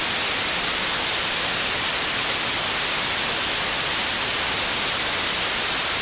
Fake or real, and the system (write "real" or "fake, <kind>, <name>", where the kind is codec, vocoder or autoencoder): real